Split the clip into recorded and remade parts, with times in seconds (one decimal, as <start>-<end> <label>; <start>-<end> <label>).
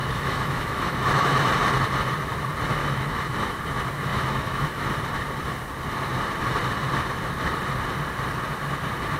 0.0-1.5 remade; 1.5-2.8 recorded; 2.8-3.6 remade; 3.6-4.1 recorded; 4.1-4.9 remade; 4.9-9.2 recorded